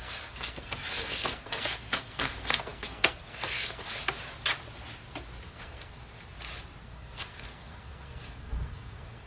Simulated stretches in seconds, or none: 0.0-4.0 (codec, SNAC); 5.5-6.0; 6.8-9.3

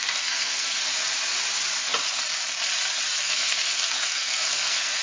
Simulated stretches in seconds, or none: 0.0-0.9 (codec, SNAC); 3.2-5.0

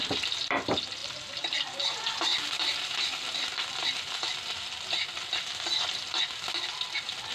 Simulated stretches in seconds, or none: 1.0-1.6 (vocoder, BigVGAN v2)

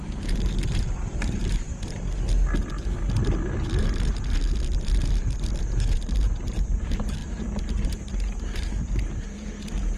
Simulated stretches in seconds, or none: 0.0-1.7 (vocoder, BigVGAN v2); 3.6-10.0

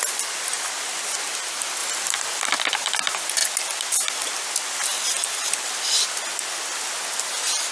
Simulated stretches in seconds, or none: 1.8-2.4 (vocoder, BigVGAN v2)